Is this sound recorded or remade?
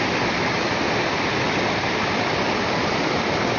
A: recorded